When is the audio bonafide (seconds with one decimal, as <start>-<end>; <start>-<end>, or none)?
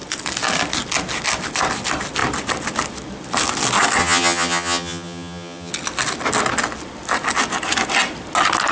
0.0-4.0; 5.7-8.7